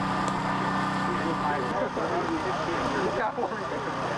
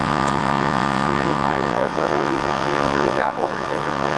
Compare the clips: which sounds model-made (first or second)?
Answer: second